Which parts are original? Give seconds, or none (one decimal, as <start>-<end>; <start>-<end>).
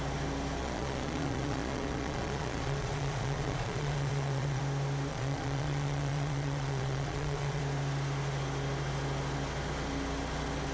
0.0-0.6; 4.6-5.1; 7.6-10.7